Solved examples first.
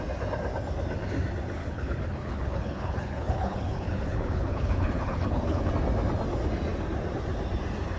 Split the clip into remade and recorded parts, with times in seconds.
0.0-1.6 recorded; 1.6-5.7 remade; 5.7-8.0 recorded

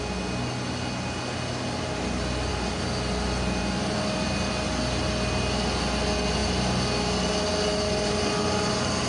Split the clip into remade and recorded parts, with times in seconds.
0.0-9.1 recorded

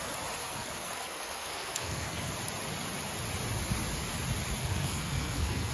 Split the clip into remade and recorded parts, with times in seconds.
0.0-0.4 recorded; 0.4-2.3 remade; 2.3-4.6 recorded; 4.6-5.7 remade

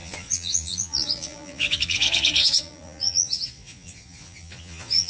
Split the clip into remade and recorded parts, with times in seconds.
0.0-5.1 remade